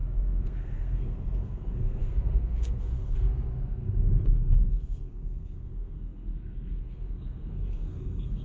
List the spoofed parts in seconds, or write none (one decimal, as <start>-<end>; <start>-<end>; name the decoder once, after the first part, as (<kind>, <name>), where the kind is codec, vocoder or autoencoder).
0.0-8.4 (codec, SNAC)